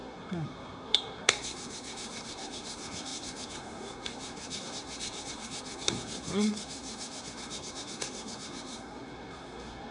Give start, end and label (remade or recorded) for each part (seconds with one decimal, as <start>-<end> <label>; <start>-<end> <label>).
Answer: 0.0-9.9 remade